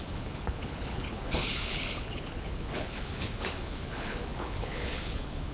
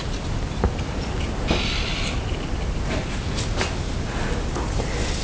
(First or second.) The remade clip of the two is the first